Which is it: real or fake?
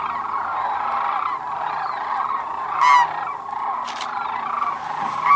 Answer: real